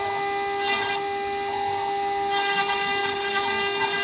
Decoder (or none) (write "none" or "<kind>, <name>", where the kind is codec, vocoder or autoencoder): none